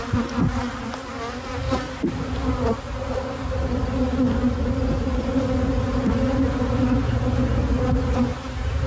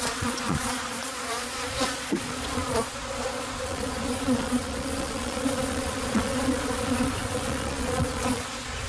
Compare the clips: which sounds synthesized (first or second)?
second